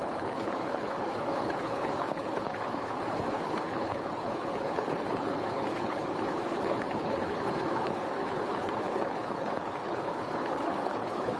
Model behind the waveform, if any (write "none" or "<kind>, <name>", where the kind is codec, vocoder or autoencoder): codec, HILCodec